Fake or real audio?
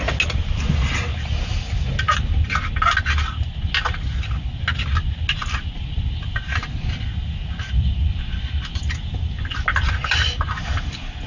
real